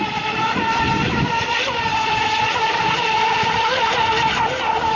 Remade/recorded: remade